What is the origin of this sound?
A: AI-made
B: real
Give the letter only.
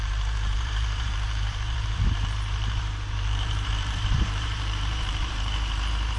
A